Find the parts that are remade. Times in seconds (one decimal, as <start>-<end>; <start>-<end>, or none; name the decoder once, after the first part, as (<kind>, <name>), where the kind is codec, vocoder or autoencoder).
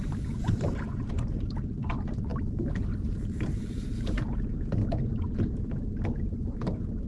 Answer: 0.0-2.3 (vocoder, BigVGAN v2); 2.9-4.8; 5.4-7.1